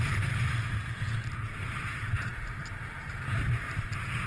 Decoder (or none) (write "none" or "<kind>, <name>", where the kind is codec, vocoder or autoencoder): vocoder, BigVGAN v2